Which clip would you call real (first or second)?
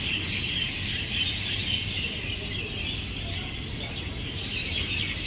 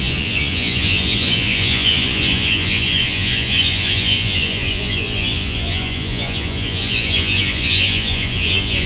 first